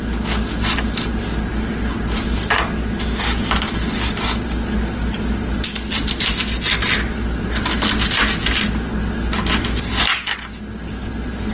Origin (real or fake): real